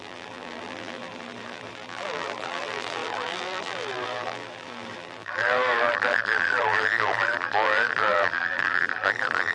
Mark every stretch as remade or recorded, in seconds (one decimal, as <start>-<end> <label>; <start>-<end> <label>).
0.0-9.5 remade